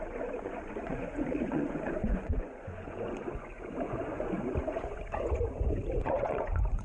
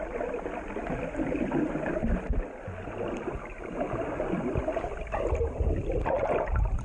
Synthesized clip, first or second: first